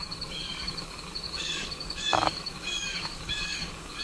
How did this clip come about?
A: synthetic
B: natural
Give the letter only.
A